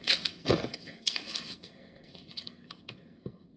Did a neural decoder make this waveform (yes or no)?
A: yes